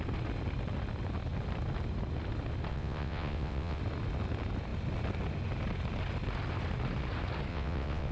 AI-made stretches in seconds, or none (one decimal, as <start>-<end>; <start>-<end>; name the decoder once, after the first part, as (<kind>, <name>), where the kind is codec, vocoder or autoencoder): 2.7-3.8 (vocoder, WaveNeXt); 7.5-8.1